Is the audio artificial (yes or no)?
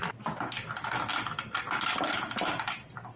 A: no